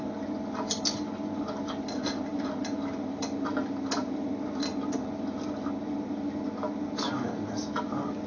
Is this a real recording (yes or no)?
yes